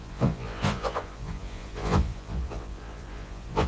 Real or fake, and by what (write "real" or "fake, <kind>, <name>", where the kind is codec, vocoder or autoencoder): fake, vocoder, Vocos